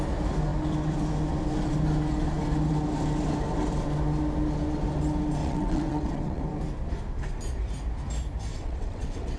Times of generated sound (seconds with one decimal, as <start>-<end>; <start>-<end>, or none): 5.4-6.4; 8.5-9.4